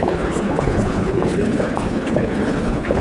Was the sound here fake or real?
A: fake